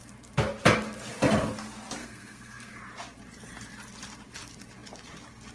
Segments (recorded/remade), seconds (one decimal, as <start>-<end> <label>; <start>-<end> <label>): 0.0-2.0 recorded; 2.0-2.8 remade; 2.8-5.5 recorded